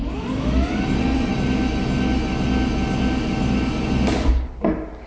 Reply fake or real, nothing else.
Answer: real